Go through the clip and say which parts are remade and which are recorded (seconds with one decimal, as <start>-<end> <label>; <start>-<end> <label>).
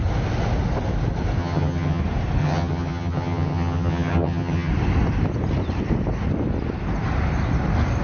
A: 0.0-1.4 recorded; 1.4-2.0 remade; 2.0-2.4 recorded; 2.4-4.7 remade; 4.7-8.0 recorded